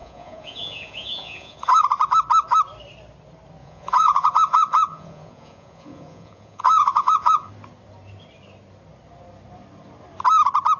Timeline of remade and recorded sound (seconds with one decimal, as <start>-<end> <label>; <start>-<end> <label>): 0.0-1.8 remade; 1.8-3.6 recorded; 3.6-7.5 remade; 7.5-10.8 recorded